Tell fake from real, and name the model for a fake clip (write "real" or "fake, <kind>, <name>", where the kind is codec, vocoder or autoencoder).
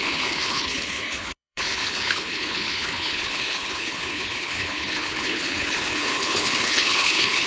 fake, codec, HILCodec